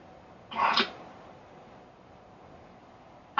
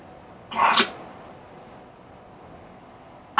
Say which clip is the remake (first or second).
first